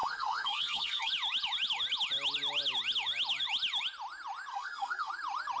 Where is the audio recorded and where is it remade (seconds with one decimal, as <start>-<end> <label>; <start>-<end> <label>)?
0.0-1.1 remade; 1.1-4.5 recorded; 4.5-5.1 remade; 5.1-5.6 recorded